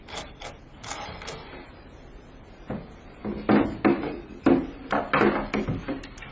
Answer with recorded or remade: recorded